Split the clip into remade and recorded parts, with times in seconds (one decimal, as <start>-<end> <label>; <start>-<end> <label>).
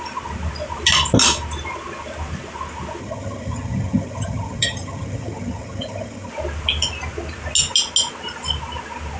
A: 0.0-3.0 recorded; 3.0-6.3 remade; 6.3-9.2 recorded